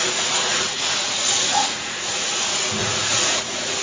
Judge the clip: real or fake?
fake